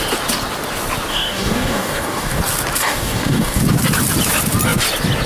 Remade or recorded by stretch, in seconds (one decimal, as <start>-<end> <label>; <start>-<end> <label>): 0.0-1.1 recorded; 1.1-2.4 remade; 2.4-2.8 recorded; 2.8-3.6 remade; 3.6-5.3 recorded